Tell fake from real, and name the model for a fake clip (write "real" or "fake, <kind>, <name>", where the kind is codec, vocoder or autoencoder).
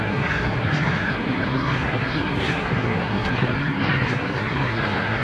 fake, codec, SNAC